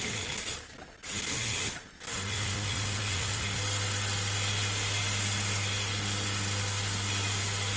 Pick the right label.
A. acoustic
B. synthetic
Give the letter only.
A